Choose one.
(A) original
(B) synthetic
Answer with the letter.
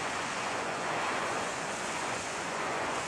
B